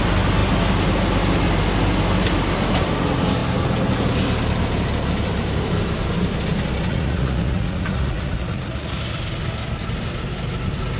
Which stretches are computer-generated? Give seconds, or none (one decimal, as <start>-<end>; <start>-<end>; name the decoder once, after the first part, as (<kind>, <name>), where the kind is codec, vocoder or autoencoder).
6.9-9.0 (vocoder, Vocos)